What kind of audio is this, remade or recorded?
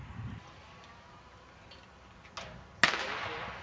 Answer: recorded